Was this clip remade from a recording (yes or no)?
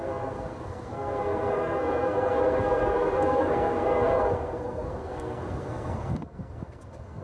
yes